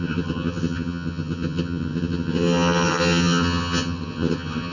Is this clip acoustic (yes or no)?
no